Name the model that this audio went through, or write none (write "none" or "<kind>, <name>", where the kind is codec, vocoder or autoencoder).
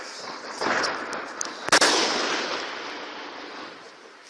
none